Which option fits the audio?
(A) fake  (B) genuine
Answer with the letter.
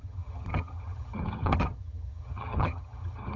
A